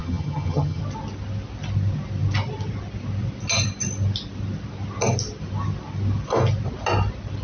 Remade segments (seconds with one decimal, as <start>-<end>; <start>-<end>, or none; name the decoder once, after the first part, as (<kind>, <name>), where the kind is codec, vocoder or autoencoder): 0.0-0.8 (vocoder, HiFi-GAN)